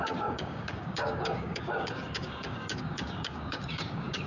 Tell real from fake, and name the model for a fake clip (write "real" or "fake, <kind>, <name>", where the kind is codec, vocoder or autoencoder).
fake, codec, DAC